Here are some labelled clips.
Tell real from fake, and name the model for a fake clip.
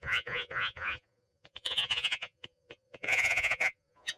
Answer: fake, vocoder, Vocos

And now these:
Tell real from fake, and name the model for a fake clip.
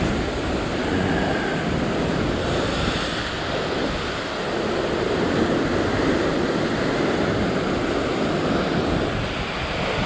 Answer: real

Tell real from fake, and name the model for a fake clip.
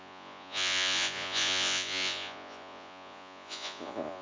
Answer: fake, vocoder, Vocos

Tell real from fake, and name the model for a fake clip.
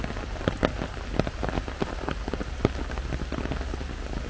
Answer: real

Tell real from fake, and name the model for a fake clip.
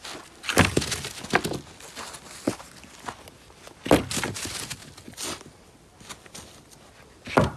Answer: real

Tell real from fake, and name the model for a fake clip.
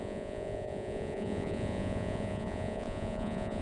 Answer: fake, vocoder, Vocos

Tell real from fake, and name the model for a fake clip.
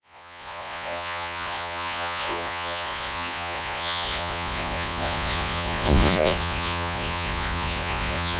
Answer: fake, vocoder, Vocos